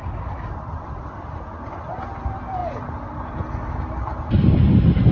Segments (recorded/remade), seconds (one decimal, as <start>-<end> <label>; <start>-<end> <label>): 0.0-2.6 remade; 2.6-5.1 recorded